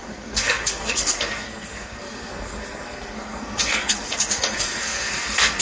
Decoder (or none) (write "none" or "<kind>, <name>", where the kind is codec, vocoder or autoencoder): codec, SNAC